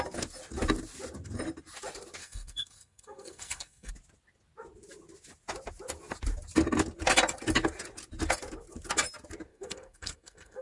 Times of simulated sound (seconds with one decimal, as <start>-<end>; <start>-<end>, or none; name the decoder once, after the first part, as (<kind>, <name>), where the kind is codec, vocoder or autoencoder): 2.2-3.9 (codec, SNAC); 9.5-10.6